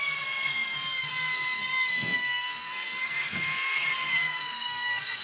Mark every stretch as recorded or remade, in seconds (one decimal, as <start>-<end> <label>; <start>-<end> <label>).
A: 0.0-5.2 remade